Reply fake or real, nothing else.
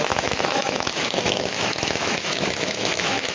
fake